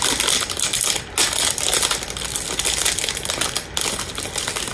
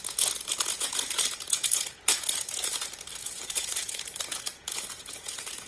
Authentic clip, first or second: first